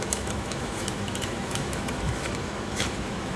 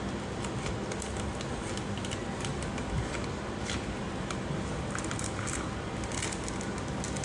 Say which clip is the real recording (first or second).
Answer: second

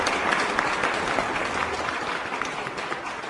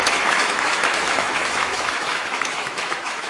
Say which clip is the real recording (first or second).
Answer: first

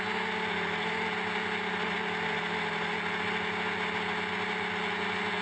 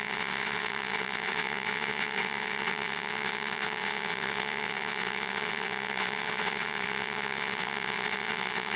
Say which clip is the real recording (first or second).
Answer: first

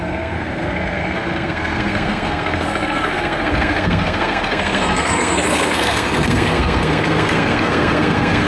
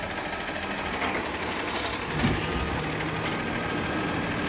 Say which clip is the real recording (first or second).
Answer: second